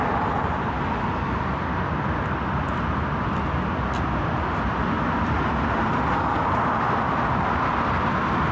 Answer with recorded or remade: recorded